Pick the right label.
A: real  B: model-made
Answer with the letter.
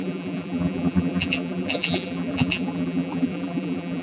B